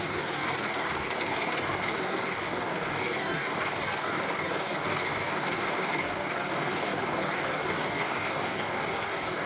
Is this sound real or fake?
fake